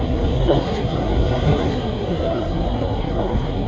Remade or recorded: remade